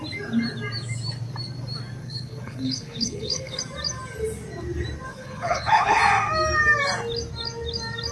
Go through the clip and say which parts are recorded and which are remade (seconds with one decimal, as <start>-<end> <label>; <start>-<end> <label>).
0.0-2.0 recorded; 2.0-3.6 remade; 3.6-5.1 recorded; 5.1-6.0 remade; 6.0-8.1 recorded